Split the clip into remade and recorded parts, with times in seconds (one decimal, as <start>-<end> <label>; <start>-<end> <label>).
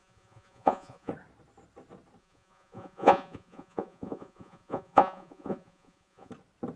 0.0-1.1 remade; 1.1-2.2 recorded; 2.2-6.3 remade; 6.3-6.8 recorded